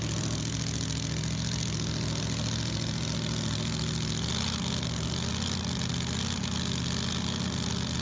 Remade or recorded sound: recorded